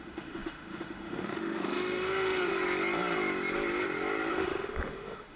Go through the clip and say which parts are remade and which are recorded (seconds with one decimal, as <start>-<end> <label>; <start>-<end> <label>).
0.0-2.5 remade; 2.5-4.3 recorded; 4.3-5.4 remade